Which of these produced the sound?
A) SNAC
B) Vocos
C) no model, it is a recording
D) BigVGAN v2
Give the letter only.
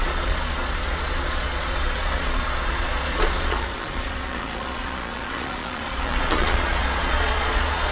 B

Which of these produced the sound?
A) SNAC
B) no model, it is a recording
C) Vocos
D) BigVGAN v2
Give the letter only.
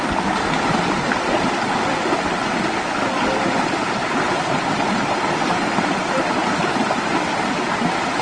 B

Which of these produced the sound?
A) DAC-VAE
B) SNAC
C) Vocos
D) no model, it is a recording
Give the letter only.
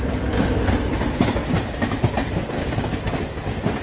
D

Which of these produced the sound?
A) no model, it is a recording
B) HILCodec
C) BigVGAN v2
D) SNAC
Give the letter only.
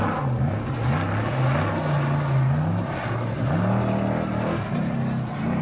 A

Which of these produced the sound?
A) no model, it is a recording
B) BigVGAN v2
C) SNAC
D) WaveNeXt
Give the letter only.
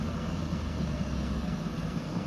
C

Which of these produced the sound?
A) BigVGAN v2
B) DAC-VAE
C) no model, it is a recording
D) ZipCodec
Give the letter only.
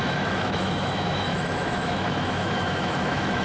B